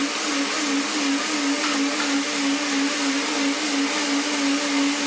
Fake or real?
real